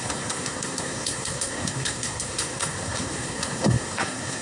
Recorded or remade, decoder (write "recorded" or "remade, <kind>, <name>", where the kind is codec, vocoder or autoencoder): remade, codec, SNAC